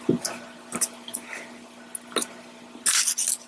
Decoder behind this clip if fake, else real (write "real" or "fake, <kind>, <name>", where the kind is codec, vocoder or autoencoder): real